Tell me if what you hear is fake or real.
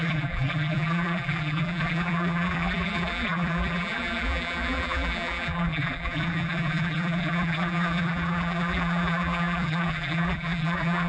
fake